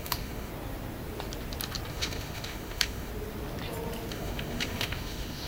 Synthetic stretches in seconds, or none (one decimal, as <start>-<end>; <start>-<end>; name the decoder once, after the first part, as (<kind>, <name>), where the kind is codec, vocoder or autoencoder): 0.0-0.5 (autoencoder, DAC-VAE); 1.9-3.1; 4.1-5.5